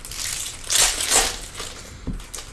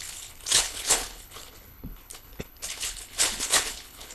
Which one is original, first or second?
first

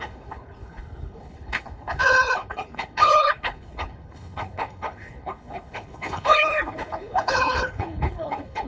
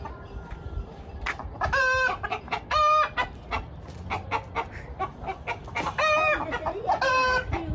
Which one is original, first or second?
second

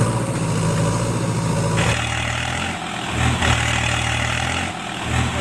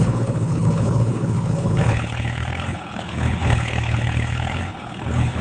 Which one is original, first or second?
first